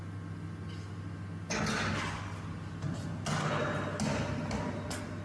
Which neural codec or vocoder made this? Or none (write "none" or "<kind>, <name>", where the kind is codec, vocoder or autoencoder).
none